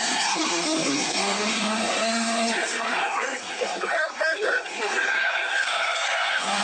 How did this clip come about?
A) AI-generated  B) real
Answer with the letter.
A